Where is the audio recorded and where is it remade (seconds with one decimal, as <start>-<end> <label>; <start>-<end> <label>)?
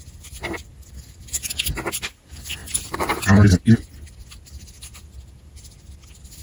0.0-2.6 recorded; 2.6-3.1 remade; 3.1-6.4 recorded